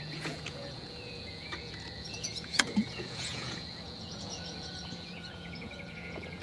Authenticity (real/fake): fake